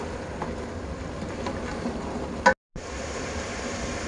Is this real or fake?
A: real